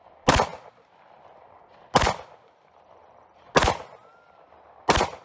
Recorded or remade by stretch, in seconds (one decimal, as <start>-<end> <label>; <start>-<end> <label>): 0.0-5.2 recorded